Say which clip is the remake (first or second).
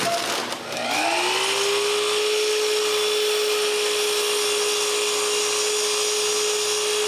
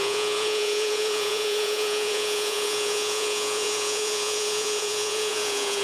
second